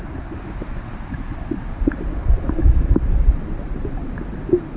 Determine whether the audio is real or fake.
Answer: real